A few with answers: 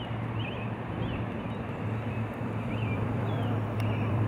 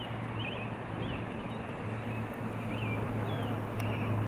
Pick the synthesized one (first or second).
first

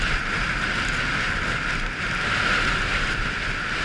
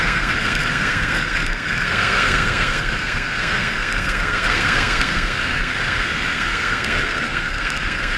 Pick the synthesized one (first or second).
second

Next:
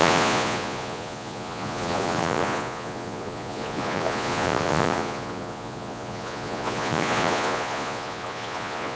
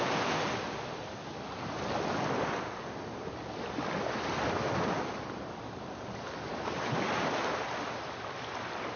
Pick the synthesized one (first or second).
first